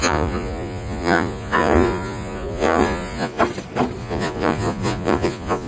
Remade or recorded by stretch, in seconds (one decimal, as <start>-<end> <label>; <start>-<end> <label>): 0.0-3.4 remade; 3.4-4.0 recorded; 4.0-5.7 remade